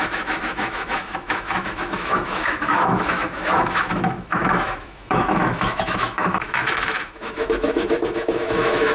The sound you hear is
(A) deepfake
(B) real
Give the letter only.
A